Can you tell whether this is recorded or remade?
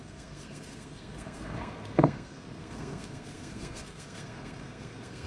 remade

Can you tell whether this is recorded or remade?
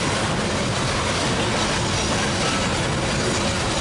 recorded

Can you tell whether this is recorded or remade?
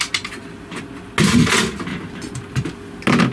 recorded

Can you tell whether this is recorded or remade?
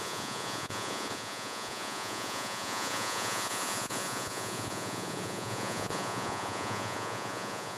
remade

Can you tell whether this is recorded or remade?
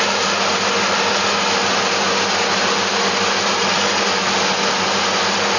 recorded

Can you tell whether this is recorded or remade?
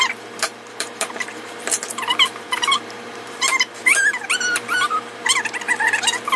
remade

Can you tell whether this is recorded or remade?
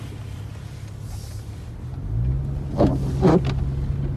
recorded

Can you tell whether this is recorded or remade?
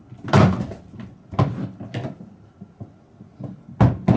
recorded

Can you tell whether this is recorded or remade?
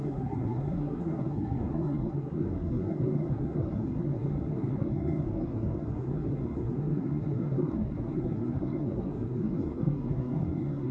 remade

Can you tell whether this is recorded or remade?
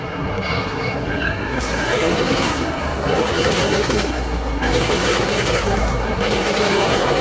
remade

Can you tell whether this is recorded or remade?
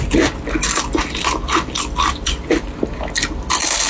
recorded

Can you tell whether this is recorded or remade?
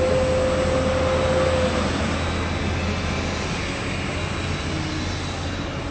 recorded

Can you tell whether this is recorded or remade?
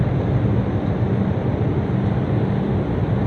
remade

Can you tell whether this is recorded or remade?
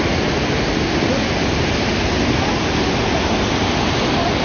recorded